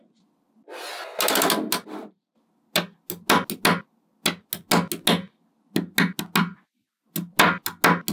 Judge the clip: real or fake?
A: real